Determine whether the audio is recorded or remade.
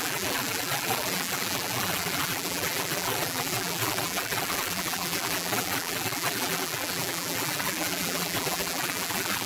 remade